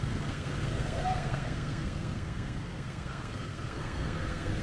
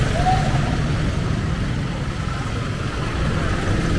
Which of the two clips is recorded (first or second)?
second